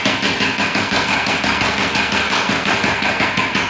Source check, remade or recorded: remade